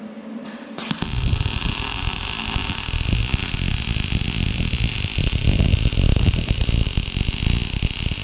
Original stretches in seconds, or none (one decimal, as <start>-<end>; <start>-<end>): 0.0-8.2